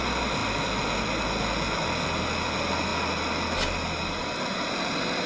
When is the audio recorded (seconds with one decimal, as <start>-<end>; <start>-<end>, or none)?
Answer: 0.0-5.3